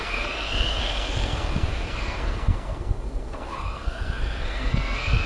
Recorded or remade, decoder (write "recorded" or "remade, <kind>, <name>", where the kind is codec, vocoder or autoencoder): remade, codec, SNAC